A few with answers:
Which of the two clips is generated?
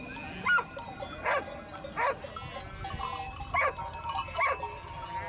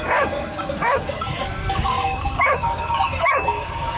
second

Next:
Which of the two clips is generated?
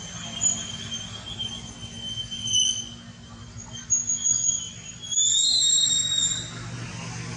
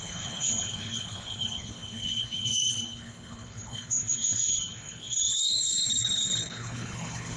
second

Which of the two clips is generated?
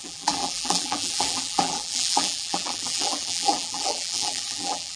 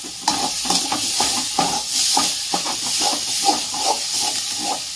first